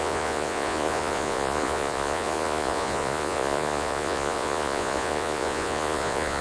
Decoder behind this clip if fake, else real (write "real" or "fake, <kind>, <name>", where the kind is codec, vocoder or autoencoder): fake, vocoder, Vocos